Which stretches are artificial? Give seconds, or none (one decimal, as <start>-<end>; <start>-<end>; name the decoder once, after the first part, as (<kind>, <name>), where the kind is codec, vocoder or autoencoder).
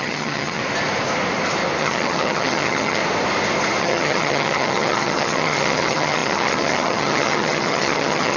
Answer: 0.0-0.6 (vocoder, HiFi-GAN); 1.8-3.0; 3.8-8.4